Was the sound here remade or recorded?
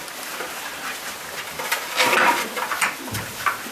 recorded